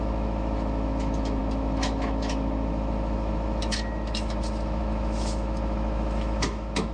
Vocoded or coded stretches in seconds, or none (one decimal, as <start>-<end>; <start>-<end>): 0.0-6.9